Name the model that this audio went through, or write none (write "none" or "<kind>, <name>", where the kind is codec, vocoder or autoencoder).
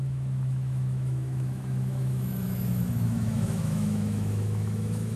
autoencoder, DAC-VAE